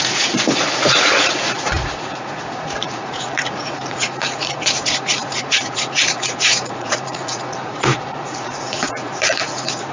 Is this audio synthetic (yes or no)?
yes